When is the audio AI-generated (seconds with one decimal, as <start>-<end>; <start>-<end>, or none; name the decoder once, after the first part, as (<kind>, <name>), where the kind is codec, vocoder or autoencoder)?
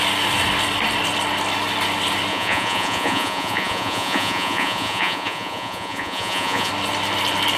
2.3-6.7 (vocoder, Vocos)